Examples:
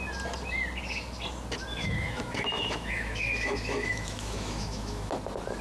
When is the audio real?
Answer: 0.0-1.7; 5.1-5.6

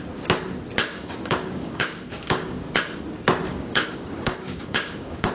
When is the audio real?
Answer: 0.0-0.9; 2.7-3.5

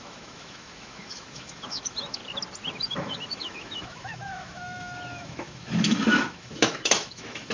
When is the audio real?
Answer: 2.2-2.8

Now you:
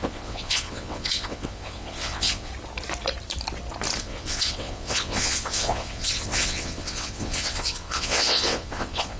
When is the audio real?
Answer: 2.5-4.0

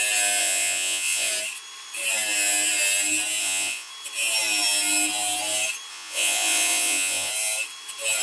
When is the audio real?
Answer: 0.0-0.4; 1.3-3.4; 3.9-5.9; 7.3-8.2

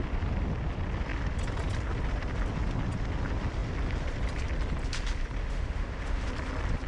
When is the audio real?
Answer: 0.0-5.4; 6.3-6.9

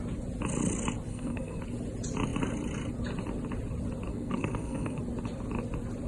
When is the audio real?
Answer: 0.0-1.1; 1.6-4.1; 5.0-6.1